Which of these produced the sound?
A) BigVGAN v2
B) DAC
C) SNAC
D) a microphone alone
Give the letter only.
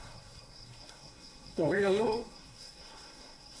C